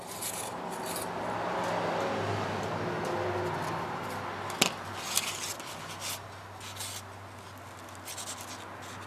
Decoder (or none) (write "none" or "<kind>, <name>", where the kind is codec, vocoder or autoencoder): none